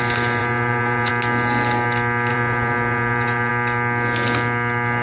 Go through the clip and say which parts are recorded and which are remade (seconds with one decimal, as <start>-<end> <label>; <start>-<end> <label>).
0.0-0.4 recorded; 0.4-1.1 remade; 1.1-2.3 recorded; 2.3-3.5 remade; 3.5-5.0 recorded